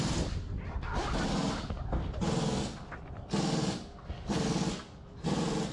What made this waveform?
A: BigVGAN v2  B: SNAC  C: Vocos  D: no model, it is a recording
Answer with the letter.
D